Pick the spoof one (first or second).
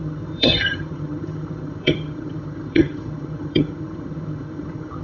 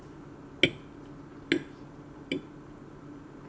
first